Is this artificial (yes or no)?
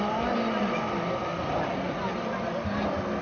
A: no